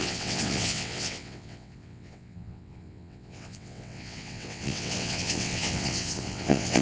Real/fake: fake